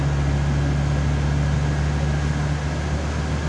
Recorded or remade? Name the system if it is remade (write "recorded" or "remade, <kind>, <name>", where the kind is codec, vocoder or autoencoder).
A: recorded